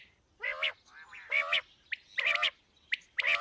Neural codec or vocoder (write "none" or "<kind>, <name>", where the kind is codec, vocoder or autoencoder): none